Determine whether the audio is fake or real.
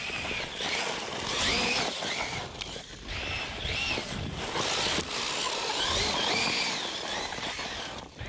real